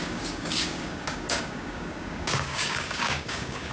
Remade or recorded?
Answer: remade